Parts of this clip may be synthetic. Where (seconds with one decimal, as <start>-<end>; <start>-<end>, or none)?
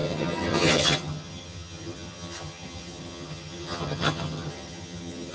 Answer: 0.0-5.3